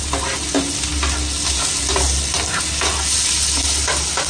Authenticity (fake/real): real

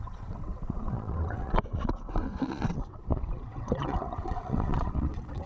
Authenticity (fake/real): fake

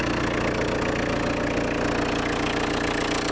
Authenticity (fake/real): real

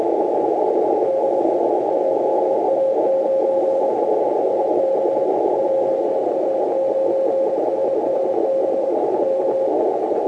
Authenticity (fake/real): real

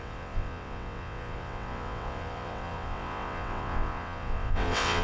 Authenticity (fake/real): fake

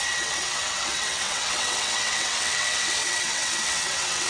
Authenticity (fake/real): fake